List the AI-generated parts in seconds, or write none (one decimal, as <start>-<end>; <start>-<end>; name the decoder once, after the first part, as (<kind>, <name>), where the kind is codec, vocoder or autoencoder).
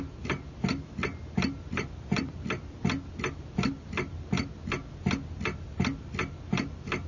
1.7-2.3 (vocoder, BigVGAN v2)